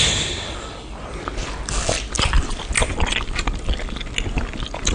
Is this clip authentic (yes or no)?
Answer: yes